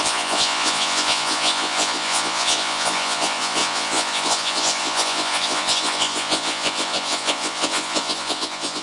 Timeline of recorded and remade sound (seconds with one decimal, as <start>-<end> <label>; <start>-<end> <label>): 0.0-8.8 remade